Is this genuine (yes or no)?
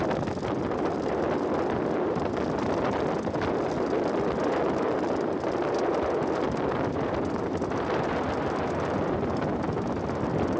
yes